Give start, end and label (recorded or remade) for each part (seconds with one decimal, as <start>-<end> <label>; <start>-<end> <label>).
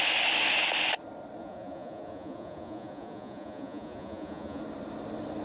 0.0-1.4 recorded; 1.4-4.6 remade; 4.6-5.4 recorded